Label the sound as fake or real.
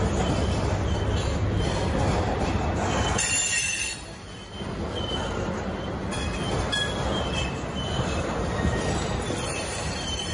real